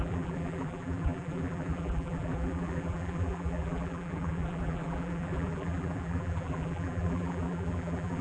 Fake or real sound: fake